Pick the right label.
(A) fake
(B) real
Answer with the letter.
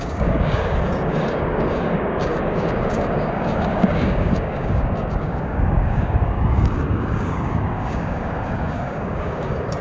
A